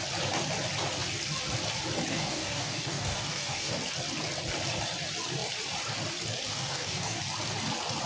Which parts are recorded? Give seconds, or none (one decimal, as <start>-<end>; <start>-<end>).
0.0-2.1; 3.8-6.5; 7.2-8.1